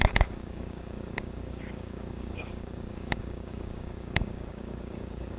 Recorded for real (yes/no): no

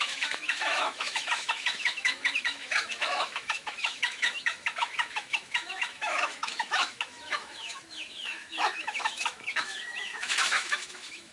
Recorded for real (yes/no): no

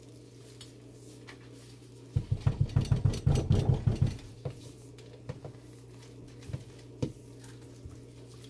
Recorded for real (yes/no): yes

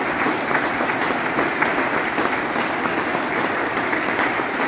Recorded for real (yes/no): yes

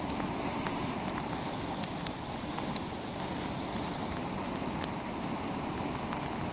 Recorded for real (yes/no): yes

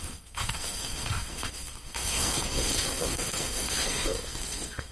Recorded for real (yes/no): no